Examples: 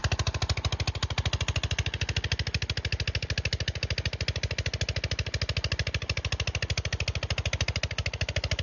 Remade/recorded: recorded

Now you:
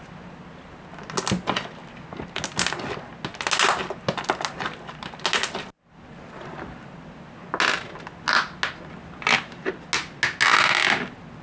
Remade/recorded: recorded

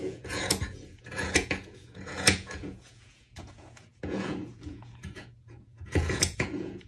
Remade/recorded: remade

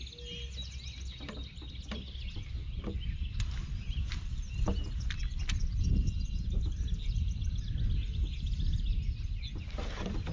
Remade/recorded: recorded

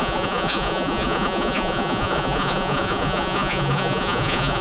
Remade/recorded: remade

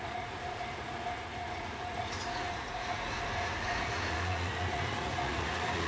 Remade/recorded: remade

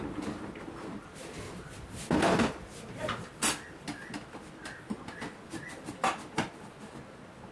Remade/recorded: recorded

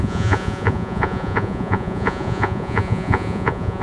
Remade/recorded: remade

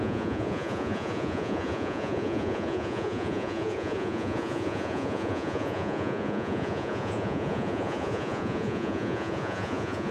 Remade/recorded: remade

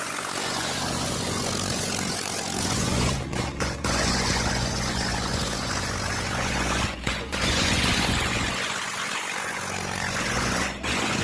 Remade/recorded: remade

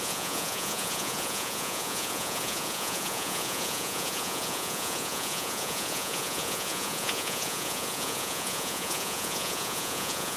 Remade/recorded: remade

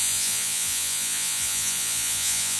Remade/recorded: remade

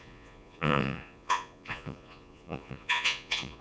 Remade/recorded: remade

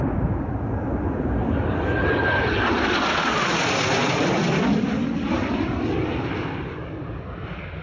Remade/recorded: recorded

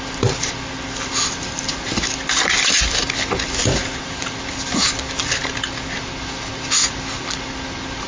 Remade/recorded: recorded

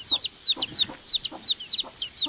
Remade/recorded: recorded